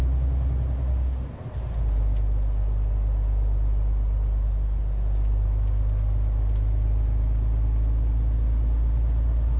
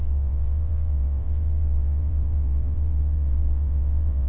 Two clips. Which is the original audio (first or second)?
first